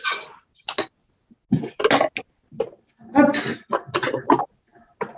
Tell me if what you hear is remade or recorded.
recorded